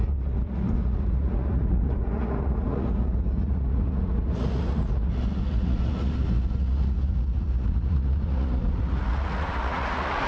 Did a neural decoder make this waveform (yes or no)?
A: yes